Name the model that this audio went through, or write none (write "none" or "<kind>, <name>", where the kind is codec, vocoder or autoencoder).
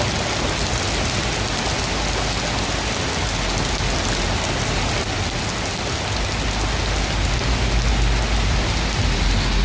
none